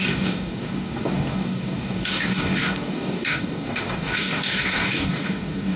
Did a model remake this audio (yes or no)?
yes